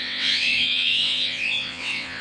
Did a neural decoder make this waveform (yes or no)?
yes